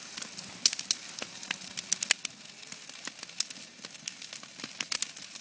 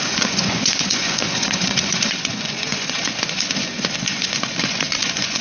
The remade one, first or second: second